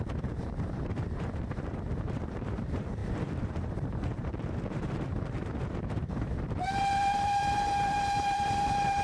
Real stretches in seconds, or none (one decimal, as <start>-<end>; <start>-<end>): none